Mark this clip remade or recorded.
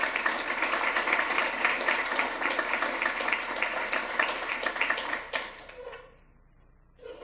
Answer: recorded